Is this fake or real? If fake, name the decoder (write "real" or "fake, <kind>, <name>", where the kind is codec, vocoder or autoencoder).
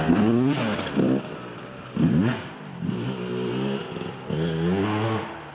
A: real